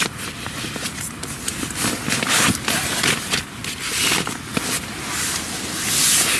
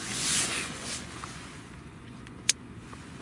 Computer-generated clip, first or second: second